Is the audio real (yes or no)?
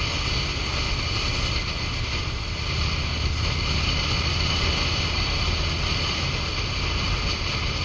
yes